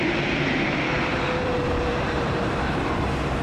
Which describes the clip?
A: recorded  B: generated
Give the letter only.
B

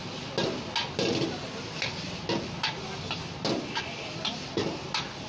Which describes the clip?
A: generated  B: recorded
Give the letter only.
B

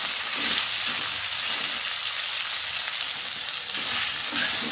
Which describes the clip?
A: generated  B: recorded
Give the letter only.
B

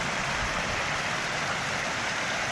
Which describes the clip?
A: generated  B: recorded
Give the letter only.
B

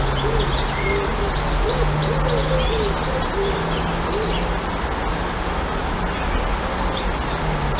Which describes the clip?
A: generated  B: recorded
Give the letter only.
B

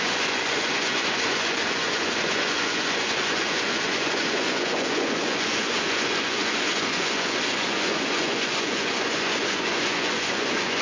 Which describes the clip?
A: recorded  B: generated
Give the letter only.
B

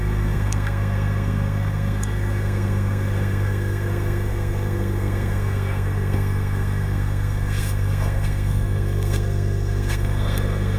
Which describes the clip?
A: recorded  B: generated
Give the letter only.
B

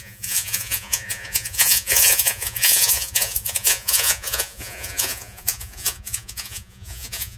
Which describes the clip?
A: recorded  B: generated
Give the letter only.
B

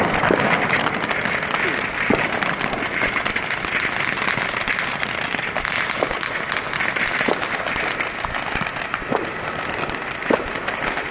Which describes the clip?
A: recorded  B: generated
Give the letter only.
A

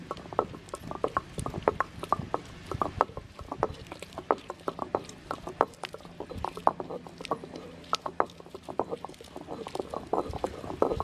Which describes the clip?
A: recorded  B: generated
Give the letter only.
A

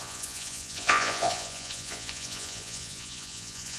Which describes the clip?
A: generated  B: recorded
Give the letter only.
A